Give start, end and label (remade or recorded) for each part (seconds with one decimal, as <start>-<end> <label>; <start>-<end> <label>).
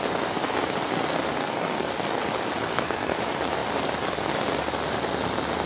0.0-1.4 recorded; 1.4-1.9 remade; 1.9-2.7 recorded; 2.7-3.2 remade; 3.2-5.7 recorded